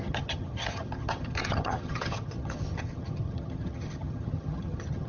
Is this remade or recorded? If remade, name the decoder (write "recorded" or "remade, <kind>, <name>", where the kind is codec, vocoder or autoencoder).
remade, vocoder, HiFi-GAN